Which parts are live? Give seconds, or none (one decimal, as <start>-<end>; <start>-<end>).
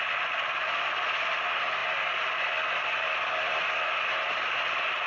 0.0-5.1